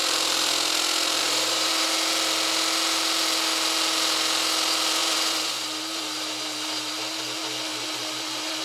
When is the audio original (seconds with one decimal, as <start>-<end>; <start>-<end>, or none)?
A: 0.5-1.2; 1.7-5.0; 7.0-7.7